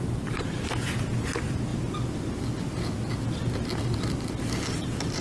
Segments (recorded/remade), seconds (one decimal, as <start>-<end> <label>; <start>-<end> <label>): 0.0-5.2 recorded